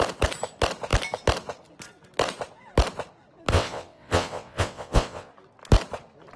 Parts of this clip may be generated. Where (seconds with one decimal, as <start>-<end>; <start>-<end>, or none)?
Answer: 3.5-5.3